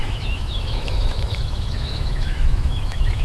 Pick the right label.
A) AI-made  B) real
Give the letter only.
A